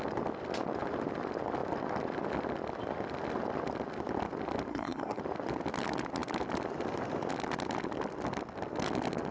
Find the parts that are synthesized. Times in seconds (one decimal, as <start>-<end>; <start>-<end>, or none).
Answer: 4.7-5.2